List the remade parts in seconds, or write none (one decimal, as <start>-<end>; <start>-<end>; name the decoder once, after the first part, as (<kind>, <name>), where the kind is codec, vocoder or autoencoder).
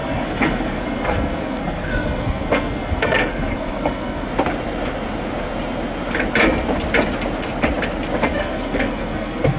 0.0-4.3 (codec, SNAC); 8.4-9.6